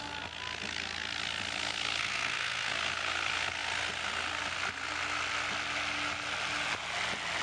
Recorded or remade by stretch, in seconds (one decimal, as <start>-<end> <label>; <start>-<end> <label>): 0.0-2.0 recorded; 2.0-2.7 remade; 2.7-7.4 recorded